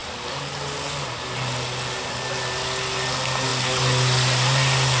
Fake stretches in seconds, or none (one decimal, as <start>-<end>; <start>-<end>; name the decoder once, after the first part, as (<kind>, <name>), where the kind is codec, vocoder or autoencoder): none